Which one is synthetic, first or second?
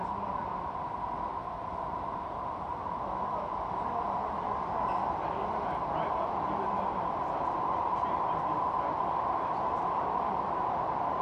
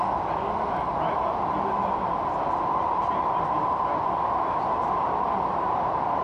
first